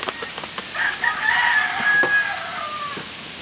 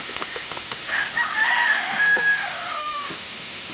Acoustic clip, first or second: first